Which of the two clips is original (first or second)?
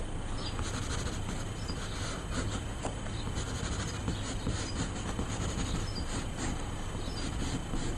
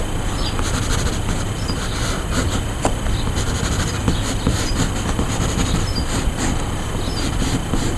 first